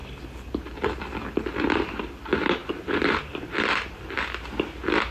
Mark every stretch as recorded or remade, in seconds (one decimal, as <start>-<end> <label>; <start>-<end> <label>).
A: 0.0-1.0 remade; 1.0-2.6 recorded; 2.6-4.2 remade; 4.2-5.1 recorded